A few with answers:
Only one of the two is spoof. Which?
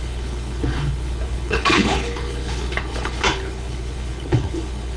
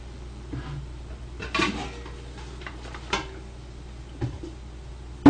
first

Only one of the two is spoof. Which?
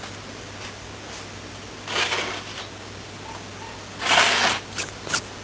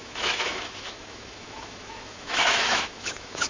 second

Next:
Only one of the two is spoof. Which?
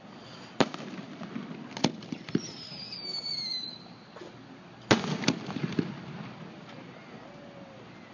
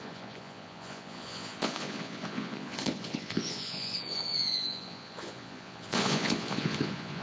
second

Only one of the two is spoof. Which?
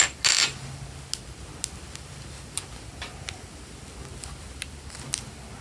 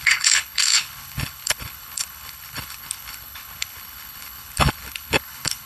second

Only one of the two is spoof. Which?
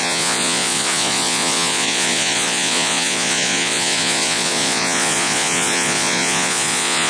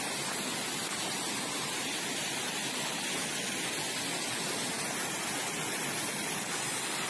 first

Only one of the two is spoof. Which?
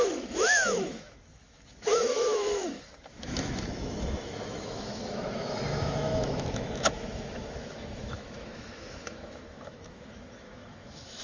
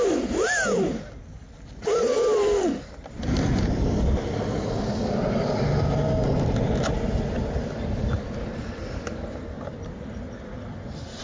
first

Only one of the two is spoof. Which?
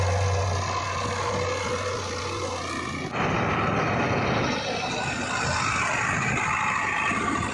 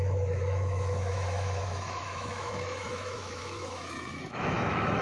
second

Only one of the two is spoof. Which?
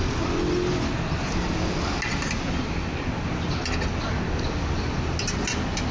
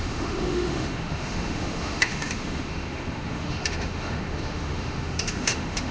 second